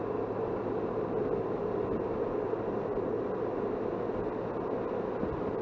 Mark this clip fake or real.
real